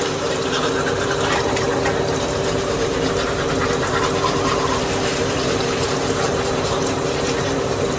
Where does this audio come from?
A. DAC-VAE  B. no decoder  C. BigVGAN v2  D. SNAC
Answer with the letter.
C